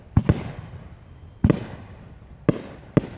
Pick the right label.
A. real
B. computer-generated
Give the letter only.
A